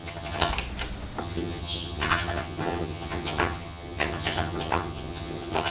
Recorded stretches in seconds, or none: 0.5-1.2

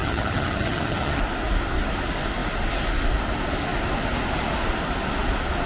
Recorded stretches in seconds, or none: 1.2-5.7

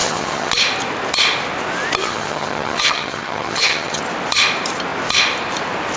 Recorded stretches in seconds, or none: 0.5-2.0; 4.0-6.0

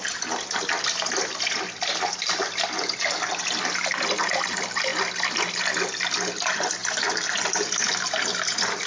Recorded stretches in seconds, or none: 0.0-8.9